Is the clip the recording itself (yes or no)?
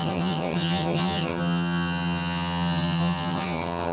no